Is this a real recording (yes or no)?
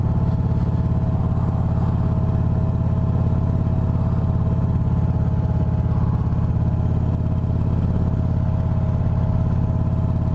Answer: yes